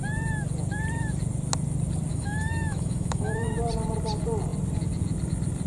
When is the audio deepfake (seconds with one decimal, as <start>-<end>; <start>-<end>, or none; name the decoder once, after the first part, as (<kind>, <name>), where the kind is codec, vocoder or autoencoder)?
2.1-3.5 (autoencoder, DAC-VAE)